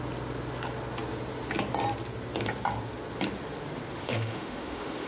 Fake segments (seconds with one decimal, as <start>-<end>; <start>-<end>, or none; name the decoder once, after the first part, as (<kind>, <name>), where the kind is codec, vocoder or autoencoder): 4.0-5.1 (autoencoder, DAC-VAE)